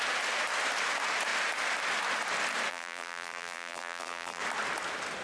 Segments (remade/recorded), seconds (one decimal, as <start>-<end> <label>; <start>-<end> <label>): 0.0-2.7 recorded; 2.7-4.4 remade; 4.4-5.2 recorded